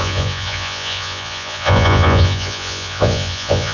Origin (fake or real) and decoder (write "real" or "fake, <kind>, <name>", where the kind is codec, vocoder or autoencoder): fake, vocoder, Vocos